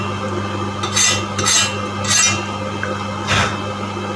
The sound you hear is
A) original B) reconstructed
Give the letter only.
A